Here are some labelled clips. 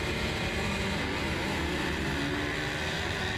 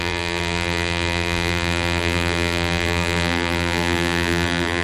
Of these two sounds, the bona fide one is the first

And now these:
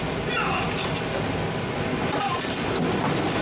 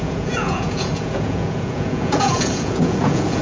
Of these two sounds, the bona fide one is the first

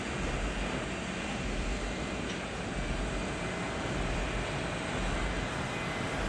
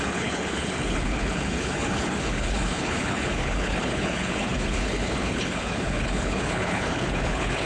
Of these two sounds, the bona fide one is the first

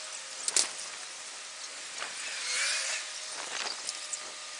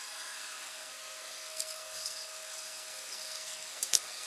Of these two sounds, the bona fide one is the first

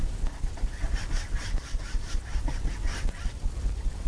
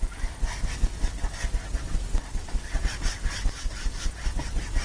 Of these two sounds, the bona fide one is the second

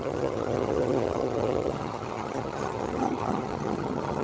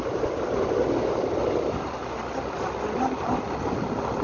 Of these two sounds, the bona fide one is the second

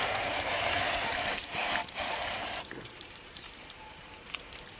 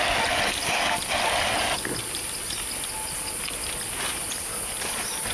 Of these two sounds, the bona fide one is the second